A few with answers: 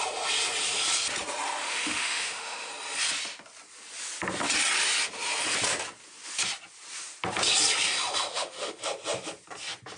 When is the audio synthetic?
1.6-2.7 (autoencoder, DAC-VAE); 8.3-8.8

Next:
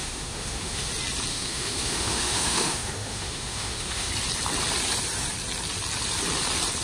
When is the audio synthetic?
0.0-0.9 (autoencoder, DAC-VAE); 1.3-4.1